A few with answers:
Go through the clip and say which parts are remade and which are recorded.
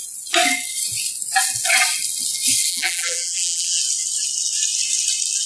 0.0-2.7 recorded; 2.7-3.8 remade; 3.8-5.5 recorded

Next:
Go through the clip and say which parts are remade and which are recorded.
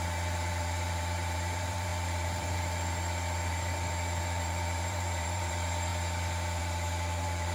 0.0-5.9 remade; 5.9-6.6 recorded; 6.6-7.5 remade